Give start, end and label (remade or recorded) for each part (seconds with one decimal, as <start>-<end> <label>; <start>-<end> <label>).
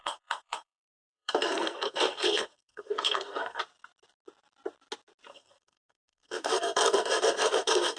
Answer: 0.0-3.6 remade; 3.6-5.3 recorded; 5.3-8.0 remade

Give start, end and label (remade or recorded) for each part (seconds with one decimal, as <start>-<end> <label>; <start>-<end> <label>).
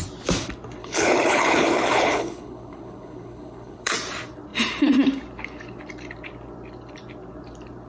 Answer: 0.0-0.8 recorded; 0.8-3.9 remade; 3.9-7.9 recorded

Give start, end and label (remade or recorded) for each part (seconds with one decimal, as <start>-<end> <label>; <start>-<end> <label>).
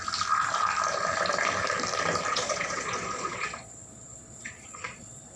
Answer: 0.0-2.3 recorded; 2.3-5.4 remade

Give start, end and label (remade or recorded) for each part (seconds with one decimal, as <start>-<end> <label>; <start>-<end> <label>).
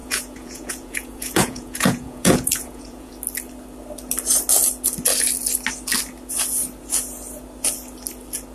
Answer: 0.0-3.1 remade; 3.1-8.5 recorded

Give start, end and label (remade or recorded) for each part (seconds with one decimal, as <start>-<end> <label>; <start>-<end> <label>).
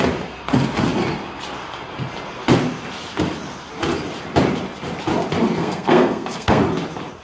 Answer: 0.0-5.6 recorded; 5.6-6.6 remade; 6.6-7.2 recorded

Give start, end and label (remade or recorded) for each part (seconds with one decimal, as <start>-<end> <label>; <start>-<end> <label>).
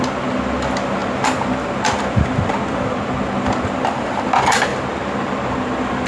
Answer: 0.0-6.1 recorded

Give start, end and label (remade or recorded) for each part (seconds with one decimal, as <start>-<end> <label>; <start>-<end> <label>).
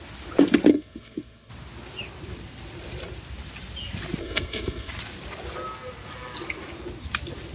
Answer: 0.0-0.7 recorded; 0.7-1.5 remade; 1.5-4.2 recorded; 4.2-4.9 remade; 4.9-7.5 recorded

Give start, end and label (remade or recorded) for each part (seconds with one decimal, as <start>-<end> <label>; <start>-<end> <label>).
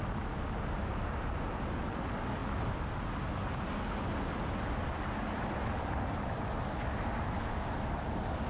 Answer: 0.0-8.5 recorded